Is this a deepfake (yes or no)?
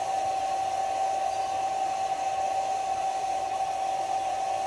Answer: no